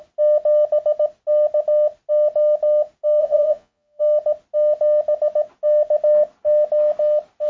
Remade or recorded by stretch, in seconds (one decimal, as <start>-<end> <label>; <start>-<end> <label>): 0.0-3.2 recorded; 3.2-4.0 remade; 4.0-7.5 recorded